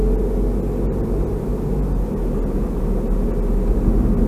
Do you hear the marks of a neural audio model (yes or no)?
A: no